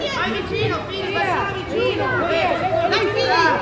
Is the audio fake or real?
real